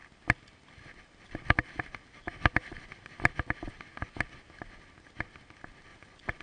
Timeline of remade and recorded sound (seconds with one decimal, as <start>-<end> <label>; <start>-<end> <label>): 0.0-5.9 recorded; 5.9-6.4 remade